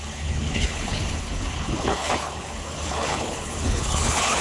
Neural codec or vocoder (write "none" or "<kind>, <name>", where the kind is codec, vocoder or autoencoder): codec, HILCodec